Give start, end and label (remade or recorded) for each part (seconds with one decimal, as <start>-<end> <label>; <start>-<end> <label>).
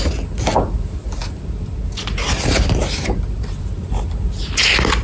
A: 0.0-5.0 recorded